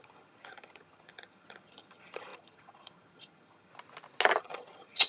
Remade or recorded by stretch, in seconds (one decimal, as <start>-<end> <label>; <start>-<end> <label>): 0.0-3.7 remade; 3.7-4.4 recorded; 4.4-5.1 remade